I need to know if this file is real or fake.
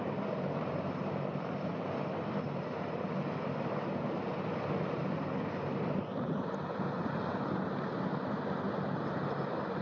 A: real